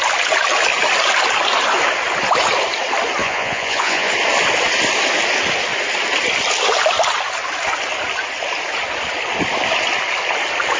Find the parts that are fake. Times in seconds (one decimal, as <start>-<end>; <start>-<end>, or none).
3.2-4.1